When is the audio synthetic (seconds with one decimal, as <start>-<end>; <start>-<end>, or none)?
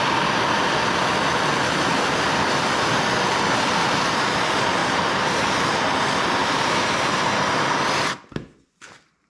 4.8-5.5; 6.4-7.6